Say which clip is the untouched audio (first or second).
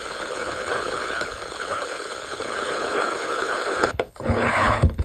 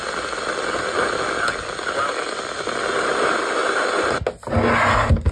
second